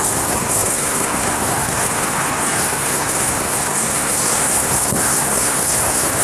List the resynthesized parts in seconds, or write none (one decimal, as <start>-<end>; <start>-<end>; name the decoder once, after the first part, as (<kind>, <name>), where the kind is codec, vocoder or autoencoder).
0.0-6.2 (codec, SNAC)